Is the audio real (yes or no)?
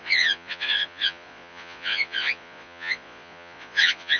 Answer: no